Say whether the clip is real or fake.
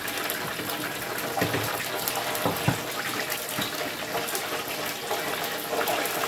real